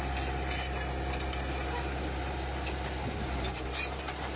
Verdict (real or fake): real